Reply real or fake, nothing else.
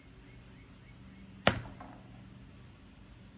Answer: real